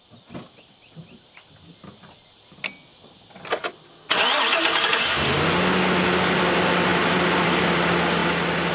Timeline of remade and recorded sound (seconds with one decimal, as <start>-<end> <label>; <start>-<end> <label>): 0.0-6.9 recorded; 6.9-7.6 remade; 7.6-8.7 recorded

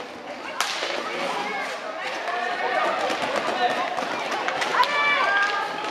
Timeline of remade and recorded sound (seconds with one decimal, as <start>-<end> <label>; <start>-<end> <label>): 0.0-4.7 recorded; 4.7-5.5 remade; 5.5-5.9 recorded

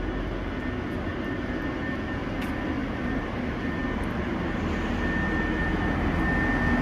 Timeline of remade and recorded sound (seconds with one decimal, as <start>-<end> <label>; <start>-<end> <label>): 0.0-1.1 recorded; 1.1-1.6 remade; 1.6-2.8 recorded; 2.8-3.4 remade; 3.4-6.8 recorded

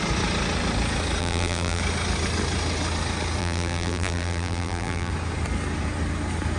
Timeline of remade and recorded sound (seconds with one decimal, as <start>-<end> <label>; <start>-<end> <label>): 0.0-1.2 recorded; 1.2-1.8 remade; 1.8-3.4 recorded; 3.4-5.1 remade; 5.1-6.6 recorded

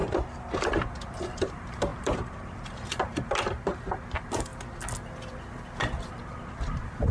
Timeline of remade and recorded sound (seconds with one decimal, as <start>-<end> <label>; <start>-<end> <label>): 0.0-0.6 recorded; 0.6-4.5 remade; 4.5-6.1 recorded; 6.1-7.1 remade

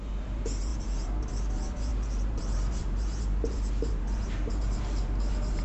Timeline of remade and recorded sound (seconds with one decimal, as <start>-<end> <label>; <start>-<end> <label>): 0.0-5.6 remade

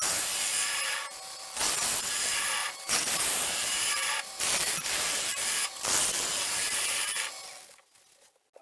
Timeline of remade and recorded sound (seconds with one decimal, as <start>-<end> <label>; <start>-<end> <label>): 0.0-2.6 recorded; 2.6-4.7 remade; 4.7-8.6 recorded

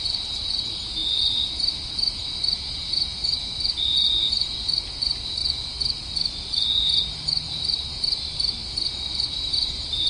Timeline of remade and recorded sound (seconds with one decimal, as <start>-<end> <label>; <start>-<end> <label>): 0.0-1.0 remade; 1.0-5.0 recorded; 5.0-5.4 remade; 5.4-7.5 recorded; 7.5-10.1 remade